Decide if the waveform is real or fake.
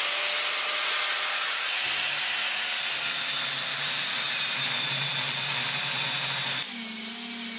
real